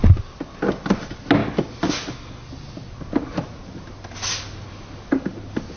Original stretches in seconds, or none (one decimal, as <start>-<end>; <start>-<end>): 0.0-5.8